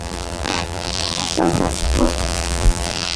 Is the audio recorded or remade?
remade